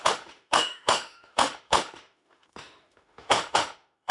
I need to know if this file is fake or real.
fake